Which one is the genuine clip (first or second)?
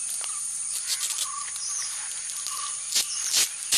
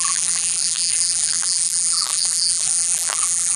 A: first